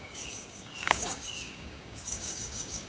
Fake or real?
fake